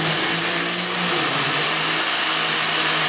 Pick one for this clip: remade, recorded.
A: recorded